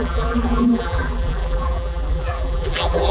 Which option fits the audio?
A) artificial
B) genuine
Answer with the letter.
A